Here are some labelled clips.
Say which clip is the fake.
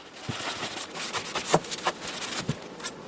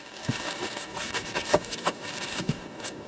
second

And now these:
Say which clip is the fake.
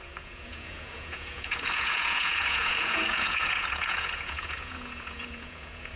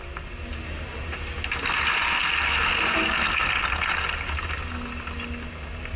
first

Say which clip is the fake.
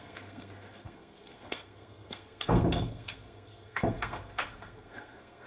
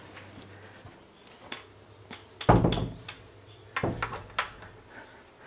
first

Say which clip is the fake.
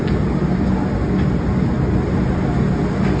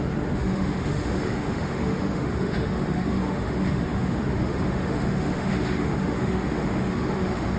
second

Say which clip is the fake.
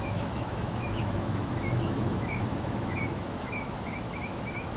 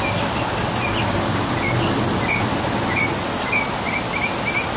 first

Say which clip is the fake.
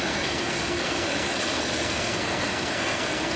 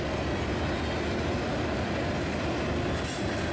first